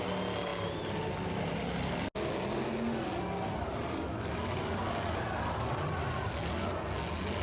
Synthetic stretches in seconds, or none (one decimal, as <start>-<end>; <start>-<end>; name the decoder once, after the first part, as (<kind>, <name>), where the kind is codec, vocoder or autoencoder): none